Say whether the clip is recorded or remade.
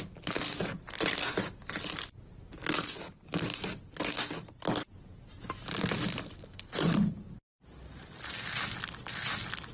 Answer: recorded